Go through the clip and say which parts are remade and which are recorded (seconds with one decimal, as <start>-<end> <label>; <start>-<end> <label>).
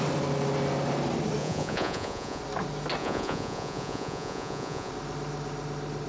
0.0-1.4 recorded; 1.4-2.4 remade; 2.4-3.0 recorded; 3.0-4.9 remade; 4.9-6.1 recorded